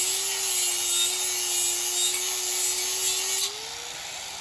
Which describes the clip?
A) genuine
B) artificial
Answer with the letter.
A